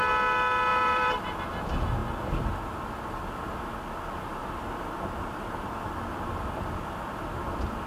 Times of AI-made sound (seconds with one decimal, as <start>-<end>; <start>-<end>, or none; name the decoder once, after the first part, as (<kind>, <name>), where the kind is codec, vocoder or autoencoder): 0.7-1.4 (vocoder, BigVGAN v2); 4.4-6.1